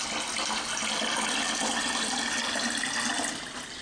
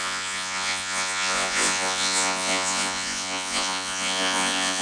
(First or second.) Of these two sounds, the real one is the first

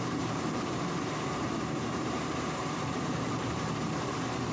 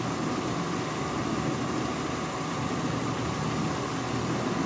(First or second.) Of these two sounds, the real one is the second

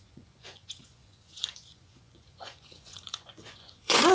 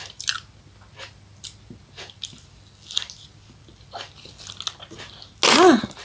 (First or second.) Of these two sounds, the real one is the second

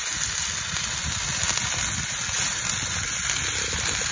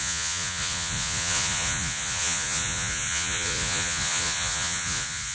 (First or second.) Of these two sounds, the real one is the first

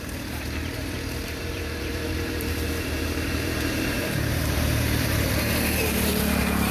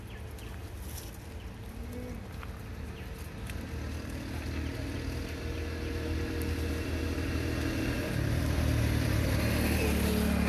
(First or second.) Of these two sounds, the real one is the second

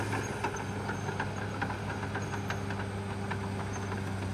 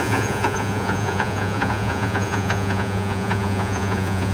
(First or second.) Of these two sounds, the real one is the first